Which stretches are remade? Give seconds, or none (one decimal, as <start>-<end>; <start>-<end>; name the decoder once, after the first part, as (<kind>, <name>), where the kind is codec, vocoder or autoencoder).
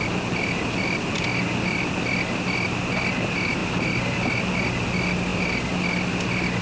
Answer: 5.3-6.6 (vocoder, BigVGAN v2)